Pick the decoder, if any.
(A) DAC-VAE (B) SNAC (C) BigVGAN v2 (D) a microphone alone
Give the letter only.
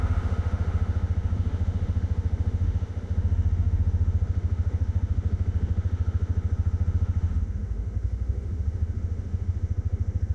A